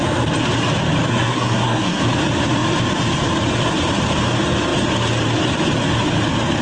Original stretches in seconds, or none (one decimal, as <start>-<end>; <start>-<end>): 0.0-1.1; 2.0-6.6